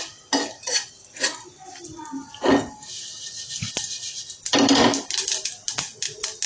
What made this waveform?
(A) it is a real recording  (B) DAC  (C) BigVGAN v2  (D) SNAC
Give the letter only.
A